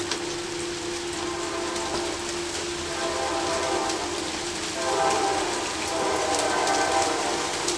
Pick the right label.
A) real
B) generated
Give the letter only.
A